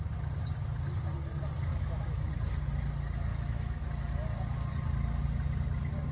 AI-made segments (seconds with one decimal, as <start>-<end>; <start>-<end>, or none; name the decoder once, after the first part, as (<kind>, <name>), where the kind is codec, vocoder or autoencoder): 1.7-2.3 (autoencoder, DAC-VAE); 3.3-3.9